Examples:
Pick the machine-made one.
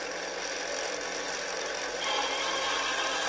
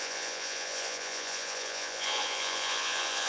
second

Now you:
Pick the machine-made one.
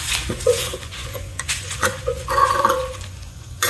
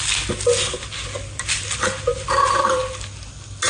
first